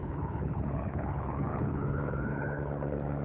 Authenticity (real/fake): fake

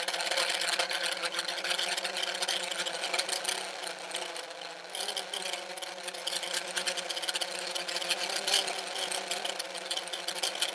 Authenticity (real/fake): real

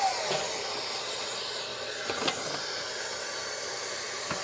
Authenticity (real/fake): real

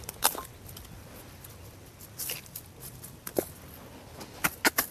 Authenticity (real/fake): real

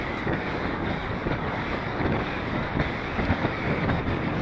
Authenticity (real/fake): fake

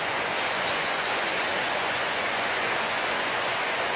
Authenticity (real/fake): fake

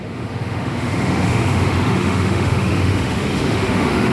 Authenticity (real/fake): fake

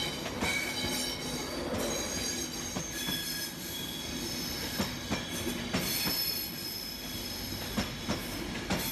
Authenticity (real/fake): real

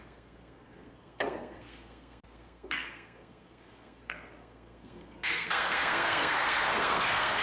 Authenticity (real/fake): fake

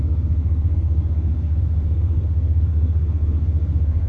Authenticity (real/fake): fake